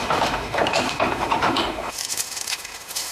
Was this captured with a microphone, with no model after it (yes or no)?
no